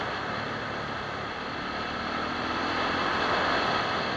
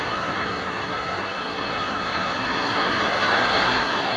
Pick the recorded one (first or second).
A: first